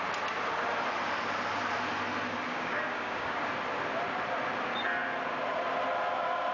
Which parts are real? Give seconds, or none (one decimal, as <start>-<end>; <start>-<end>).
0.0-2.5; 3.4-6.5